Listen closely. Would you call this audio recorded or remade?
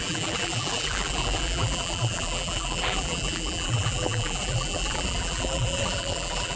remade